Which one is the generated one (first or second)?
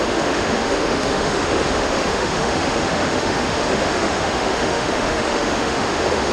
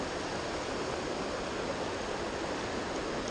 first